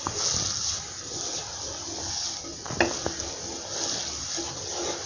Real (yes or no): yes